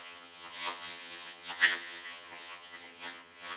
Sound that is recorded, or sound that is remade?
remade